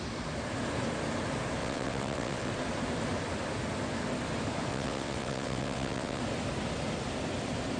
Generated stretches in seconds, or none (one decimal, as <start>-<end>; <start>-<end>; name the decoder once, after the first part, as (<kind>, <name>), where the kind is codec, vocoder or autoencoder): 1.6-2.5 (vocoder, WaveNeXt); 4.7-6.2